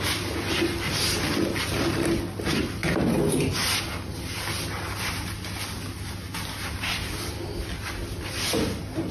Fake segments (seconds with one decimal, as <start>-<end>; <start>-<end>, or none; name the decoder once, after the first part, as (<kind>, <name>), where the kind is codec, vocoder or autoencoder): none